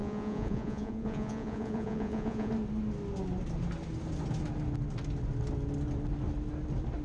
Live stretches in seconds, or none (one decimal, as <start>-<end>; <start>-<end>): 2.5-7.0